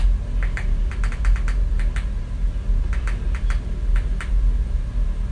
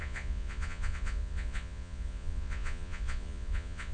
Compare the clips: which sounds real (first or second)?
first